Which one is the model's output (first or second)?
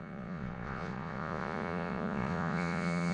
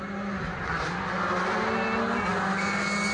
first